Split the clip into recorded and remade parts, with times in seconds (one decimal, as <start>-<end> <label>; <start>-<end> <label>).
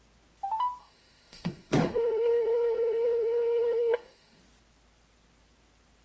0.0-0.8 recorded; 0.8-4.4 remade; 4.4-6.0 recorded